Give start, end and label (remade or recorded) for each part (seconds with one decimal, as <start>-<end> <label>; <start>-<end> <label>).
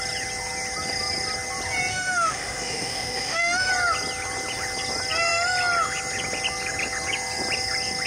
0.0-1.9 recorded; 1.9-3.7 remade; 3.7-8.1 recorded